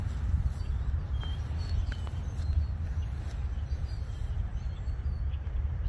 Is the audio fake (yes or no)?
no